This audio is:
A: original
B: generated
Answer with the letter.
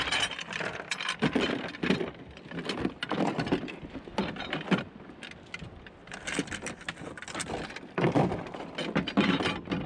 A